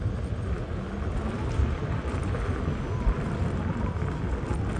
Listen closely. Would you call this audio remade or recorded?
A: recorded